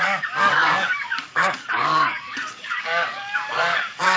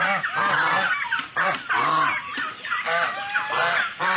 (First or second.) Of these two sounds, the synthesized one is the first